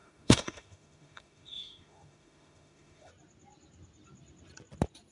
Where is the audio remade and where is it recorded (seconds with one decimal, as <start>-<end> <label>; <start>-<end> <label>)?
0.0-3.1 remade; 3.1-5.1 recorded